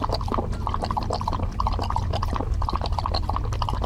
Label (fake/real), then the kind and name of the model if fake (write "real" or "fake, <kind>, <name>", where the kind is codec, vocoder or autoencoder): real